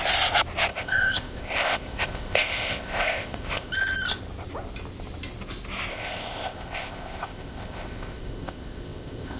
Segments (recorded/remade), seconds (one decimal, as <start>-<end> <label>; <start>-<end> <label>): 0.0-0.7 recorded; 0.7-3.7 remade; 3.7-5.9 recorded; 5.9-9.4 remade